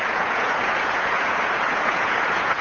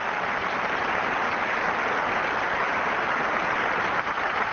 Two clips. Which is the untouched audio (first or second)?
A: second